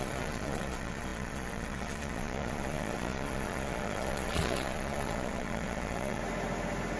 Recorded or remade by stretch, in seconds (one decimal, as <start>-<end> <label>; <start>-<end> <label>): 0.0-6.2 remade; 6.2-7.0 recorded